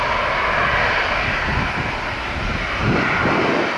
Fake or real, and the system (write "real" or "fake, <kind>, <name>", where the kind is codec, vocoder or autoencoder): real